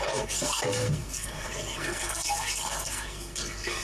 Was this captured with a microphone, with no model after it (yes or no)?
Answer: no